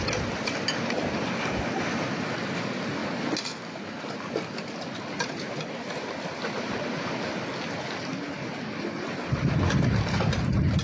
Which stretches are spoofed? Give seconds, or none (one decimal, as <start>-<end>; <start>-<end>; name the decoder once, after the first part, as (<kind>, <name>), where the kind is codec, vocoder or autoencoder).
none